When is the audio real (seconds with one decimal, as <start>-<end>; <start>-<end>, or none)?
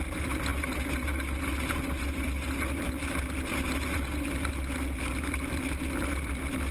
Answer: 0.0-6.7